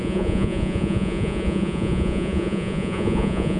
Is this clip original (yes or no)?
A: no